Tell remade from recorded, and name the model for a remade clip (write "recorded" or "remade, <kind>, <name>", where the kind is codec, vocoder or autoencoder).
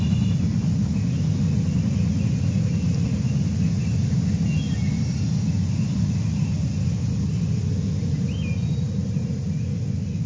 recorded